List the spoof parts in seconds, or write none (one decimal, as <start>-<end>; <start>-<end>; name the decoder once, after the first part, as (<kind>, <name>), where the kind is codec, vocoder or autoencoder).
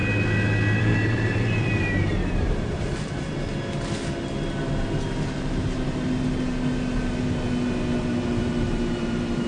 0.8-3.5 (vocoder, BigVGAN v2); 8.0-9.5